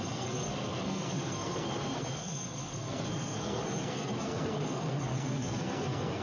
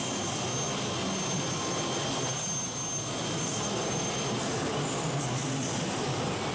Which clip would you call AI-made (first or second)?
first